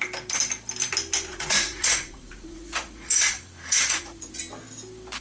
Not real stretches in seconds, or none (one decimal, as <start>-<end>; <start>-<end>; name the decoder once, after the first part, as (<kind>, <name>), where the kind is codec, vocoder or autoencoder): 1.3-4.4 (vocoder, Vocos)